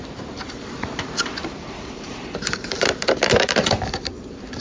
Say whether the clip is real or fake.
fake